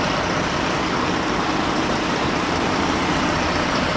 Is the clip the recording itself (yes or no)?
yes